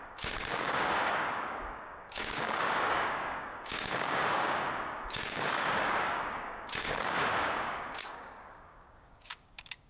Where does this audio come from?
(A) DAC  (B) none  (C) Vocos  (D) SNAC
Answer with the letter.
A